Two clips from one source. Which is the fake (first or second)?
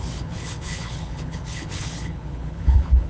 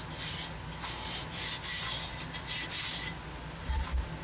first